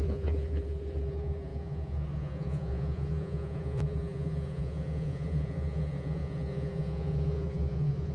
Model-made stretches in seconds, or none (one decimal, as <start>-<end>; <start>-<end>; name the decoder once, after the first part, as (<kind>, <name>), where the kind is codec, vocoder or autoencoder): 0.0-8.1 (vocoder, Vocos)